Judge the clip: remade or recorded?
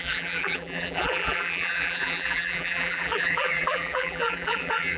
remade